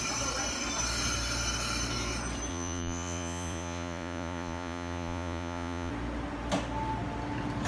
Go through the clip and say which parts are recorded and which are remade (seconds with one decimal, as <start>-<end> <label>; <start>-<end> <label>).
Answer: 0.0-2.5 recorded; 2.5-5.9 remade; 5.9-7.7 recorded